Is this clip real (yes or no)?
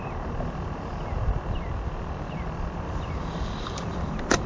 yes